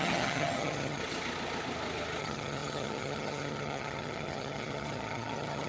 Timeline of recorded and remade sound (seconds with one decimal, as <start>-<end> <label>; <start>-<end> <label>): 0.0-1.0 remade; 1.0-2.2 recorded; 2.2-5.7 remade